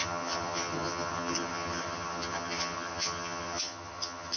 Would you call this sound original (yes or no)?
no